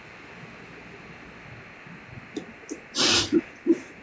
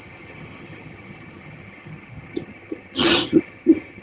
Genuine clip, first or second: first